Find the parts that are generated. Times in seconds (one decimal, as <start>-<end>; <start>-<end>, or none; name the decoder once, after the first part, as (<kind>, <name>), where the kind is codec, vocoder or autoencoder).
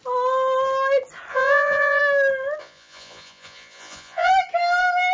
1.3-2.0 (vocoder, Vocos); 2.6-4.3